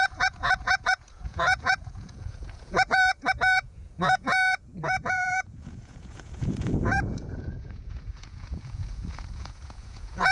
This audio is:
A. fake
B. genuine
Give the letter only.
A